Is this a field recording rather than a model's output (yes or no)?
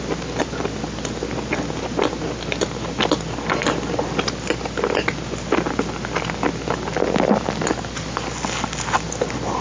yes